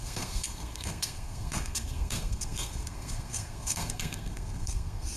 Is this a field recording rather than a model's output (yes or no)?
no